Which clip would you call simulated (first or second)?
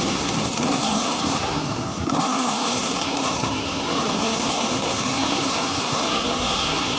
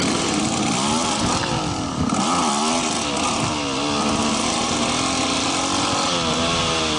first